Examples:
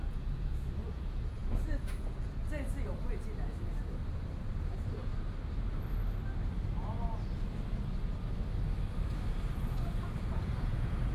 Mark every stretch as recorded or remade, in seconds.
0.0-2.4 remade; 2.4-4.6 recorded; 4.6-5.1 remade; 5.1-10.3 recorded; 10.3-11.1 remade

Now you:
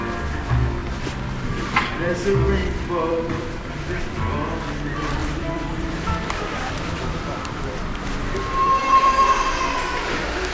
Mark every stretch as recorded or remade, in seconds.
0.0-0.8 recorded; 0.8-2.1 remade; 2.1-2.6 recorded; 2.6-3.7 remade; 3.7-5.2 recorded; 5.2-9.6 remade; 9.6-10.5 recorded